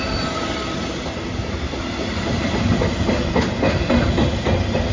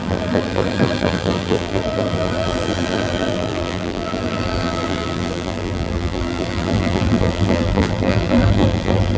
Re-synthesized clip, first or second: second